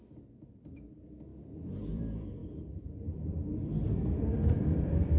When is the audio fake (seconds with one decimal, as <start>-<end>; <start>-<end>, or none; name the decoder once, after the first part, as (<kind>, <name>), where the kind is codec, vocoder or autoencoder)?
0.0-1.3 (vocoder, BigVGAN v2); 1.9-5.2